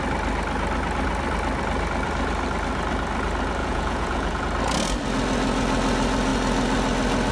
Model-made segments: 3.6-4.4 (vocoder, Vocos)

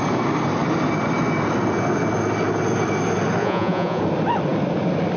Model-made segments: 3.4-4.0 (vocoder, Vocos)

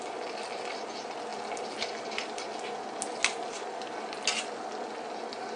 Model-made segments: none

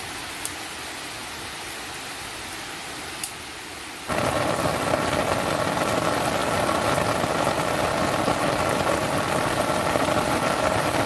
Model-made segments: none

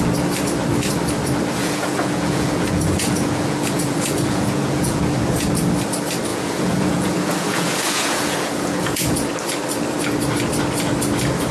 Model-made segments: 1.6-5.0 (vocoder, Vocos); 6.3-9.3

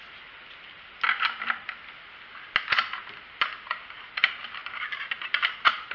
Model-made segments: none

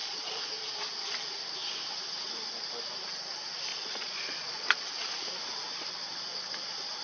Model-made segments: 0.0-0.5 (vocoder, Vocos); 3.7-4.8